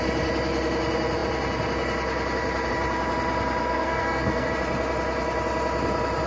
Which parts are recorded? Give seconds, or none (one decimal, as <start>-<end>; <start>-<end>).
0.0-3.6; 4.5-6.3